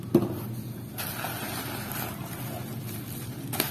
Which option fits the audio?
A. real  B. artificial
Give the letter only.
A